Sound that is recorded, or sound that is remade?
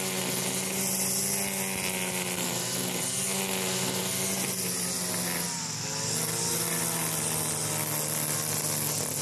recorded